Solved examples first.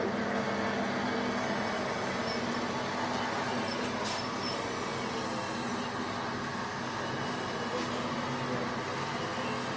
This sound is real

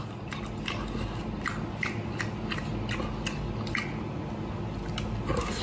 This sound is real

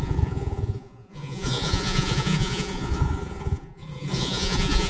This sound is fake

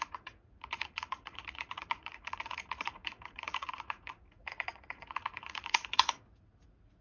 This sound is fake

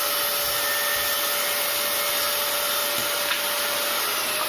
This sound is real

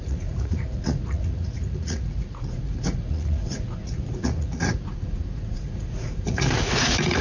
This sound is fake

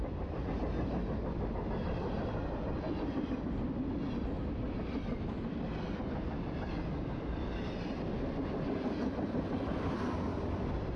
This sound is real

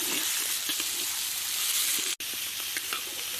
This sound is real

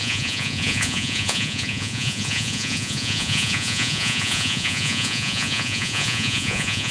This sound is fake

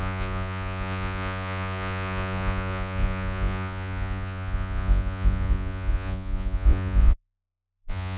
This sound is fake